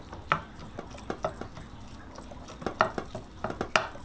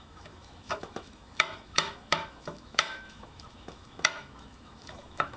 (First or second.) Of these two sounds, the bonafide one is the first